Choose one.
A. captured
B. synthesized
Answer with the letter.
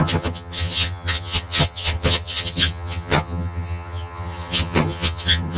B